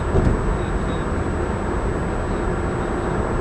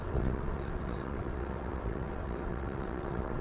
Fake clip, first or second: second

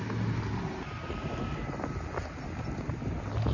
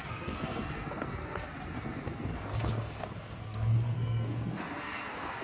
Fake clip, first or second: second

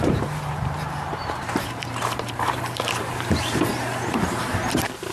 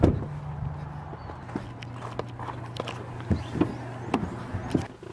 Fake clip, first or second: first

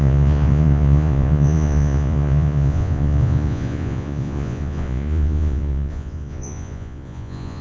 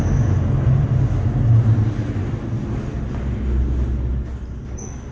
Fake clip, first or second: first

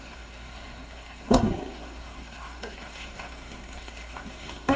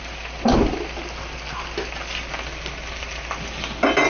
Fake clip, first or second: first